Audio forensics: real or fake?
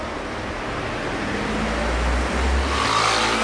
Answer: real